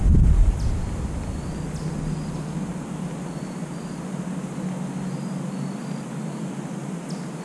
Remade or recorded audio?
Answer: recorded